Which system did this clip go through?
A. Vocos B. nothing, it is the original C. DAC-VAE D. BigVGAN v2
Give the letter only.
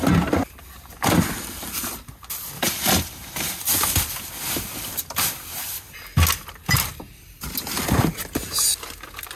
B